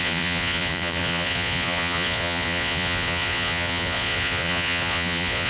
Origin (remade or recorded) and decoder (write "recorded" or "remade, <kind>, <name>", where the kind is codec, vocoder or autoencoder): remade, vocoder, Vocos